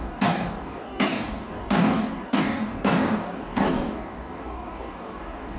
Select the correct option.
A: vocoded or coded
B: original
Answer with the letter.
A